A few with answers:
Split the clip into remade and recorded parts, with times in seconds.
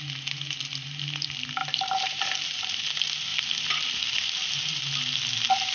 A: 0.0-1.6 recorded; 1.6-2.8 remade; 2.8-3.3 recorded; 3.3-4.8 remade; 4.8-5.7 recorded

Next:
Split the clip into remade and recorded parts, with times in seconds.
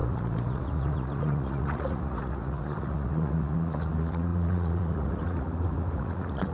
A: 0.0-6.5 remade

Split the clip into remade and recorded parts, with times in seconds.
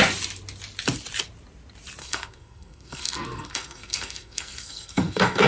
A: 0.0-2.0 recorded; 2.0-5.5 remade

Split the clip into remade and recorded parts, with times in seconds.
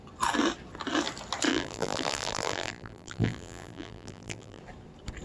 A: 0.0-1.5 recorded; 1.5-4.6 remade; 4.6-5.2 recorded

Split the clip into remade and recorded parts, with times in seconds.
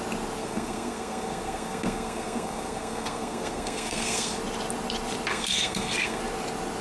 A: 0.0-0.4 recorded; 0.4-4.4 remade; 4.4-5.3 recorded; 5.3-6.2 remade; 6.2-6.8 recorded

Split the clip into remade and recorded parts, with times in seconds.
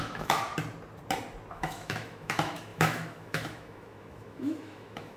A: 0.0-0.5 remade; 0.5-1.5 recorded; 1.5-5.2 remade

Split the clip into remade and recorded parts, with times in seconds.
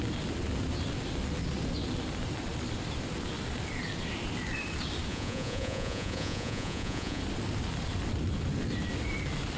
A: 0.0-5.1 recorded; 5.1-7.2 remade; 7.2-9.6 recorded